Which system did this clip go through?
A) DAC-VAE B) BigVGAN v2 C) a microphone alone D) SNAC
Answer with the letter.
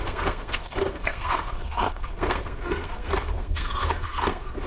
D